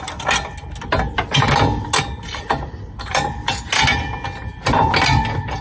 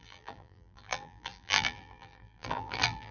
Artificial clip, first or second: second